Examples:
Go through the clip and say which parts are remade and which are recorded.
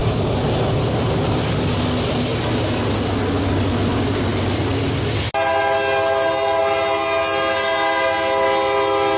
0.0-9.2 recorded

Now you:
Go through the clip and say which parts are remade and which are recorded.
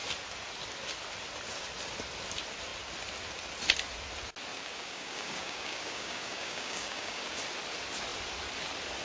0.0-4.5 recorded; 4.5-7.4 remade; 7.4-9.0 recorded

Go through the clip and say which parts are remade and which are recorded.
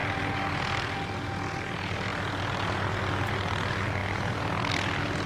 0.0-5.3 recorded